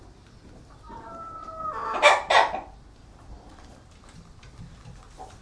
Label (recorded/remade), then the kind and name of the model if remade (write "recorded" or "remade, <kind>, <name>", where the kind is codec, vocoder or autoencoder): recorded